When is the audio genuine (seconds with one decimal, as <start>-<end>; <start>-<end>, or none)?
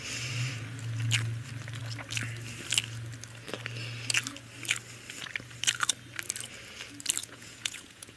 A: 0.0-7.2